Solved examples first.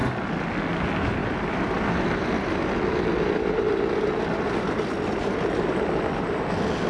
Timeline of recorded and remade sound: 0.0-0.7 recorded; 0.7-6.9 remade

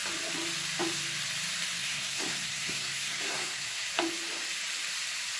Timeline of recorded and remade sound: 0.0-1.8 recorded; 1.8-3.9 remade; 3.9-5.4 recorded

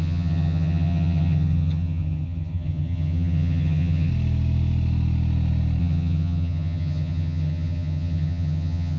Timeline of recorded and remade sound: 0.0-4.1 remade; 4.1-5.8 recorded; 5.8-9.0 remade